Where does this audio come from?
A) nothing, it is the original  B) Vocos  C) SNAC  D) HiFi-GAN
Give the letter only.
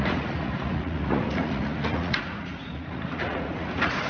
B